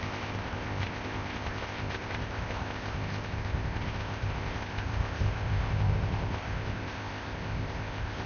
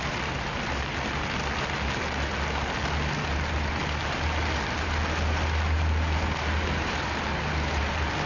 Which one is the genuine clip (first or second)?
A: second